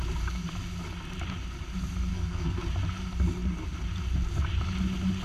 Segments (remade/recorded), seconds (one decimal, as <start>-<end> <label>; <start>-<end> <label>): 0.0-2.1 recorded; 2.1-2.6 remade; 2.6-5.2 recorded